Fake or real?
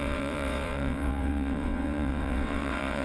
fake